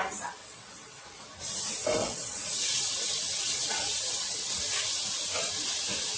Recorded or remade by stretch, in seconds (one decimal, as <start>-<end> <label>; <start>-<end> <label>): 0.0-0.4 recorded; 0.4-1.2 remade; 1.2-2.0 recorded; 2.0-4.6 remade; 4.6-6.2 recorded

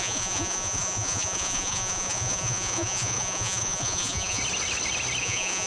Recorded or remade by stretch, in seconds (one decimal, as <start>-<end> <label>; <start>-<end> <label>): 0.0-4.4 remade; 4.4-5.2 recorded; 5.2-5.7 remade

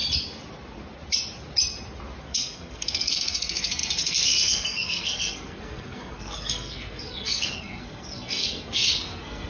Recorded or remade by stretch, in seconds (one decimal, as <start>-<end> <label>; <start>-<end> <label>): 0.0-2.2 recorded; 2.2-9.5 remade

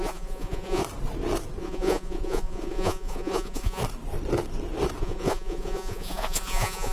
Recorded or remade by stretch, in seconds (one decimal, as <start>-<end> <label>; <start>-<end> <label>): 0.0-0.8 remade; 0.8-1.6 recorded; 1.6-3.8 remade; 3.8-5.0 recorded; 5.0-6.9 remade